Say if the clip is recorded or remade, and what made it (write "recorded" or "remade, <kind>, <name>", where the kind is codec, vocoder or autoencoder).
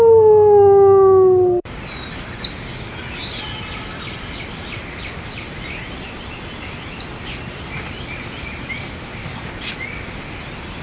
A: recorded